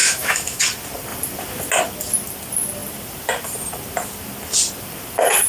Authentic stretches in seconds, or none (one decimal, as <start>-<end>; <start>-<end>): 0.6-5.5